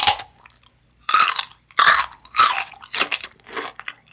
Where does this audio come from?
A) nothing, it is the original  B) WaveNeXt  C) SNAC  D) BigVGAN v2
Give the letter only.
A